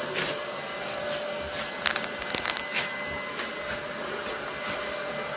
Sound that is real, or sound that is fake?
real